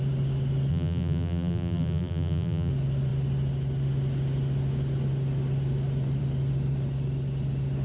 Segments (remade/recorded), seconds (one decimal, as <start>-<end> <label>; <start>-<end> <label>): 0.0-0.7 recorded; 0.7-2.7 remade; 2.7-7.8 recorded